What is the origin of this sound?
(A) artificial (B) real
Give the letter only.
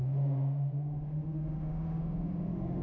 A